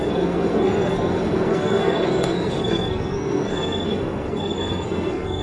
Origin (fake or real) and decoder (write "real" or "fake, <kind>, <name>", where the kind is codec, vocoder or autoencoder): fake, codec, SNAC